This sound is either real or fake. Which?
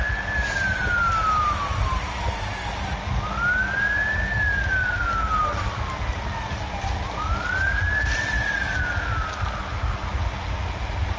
real